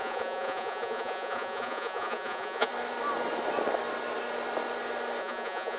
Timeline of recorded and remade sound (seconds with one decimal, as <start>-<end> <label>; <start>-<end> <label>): 0.0-2.7 remade; 2.7-5.2 recorded; 5.2-5.8 remade